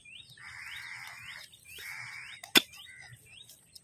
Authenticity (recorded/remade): recorded